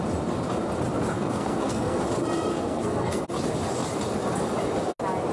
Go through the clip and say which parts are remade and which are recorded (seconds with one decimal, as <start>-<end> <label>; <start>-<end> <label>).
0.0-1.1 recorded; 1.1-2.0 remade; 2.0-2.5 recorded; 2.5-3.2 remade; 3.2-5.3 recorded